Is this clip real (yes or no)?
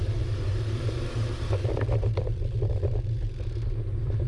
no